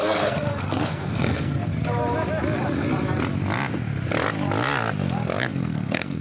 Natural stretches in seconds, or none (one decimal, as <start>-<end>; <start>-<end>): 1.7-5.4